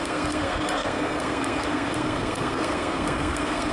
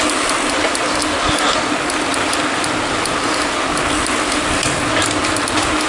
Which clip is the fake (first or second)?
first